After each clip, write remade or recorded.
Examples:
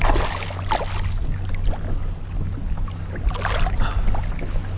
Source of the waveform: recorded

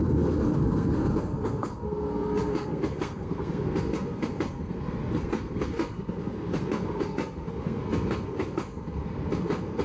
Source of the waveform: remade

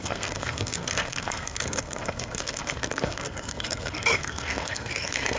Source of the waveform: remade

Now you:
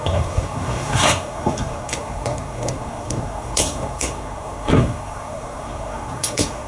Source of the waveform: remade